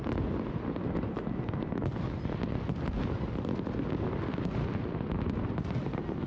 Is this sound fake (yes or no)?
no